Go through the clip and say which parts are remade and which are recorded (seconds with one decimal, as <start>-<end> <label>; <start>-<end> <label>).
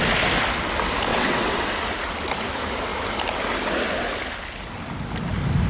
0.0-1.1 recorded; 1.1-1.7 remade; 1.7-5.7 recorded